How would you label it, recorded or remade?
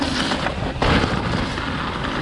recorded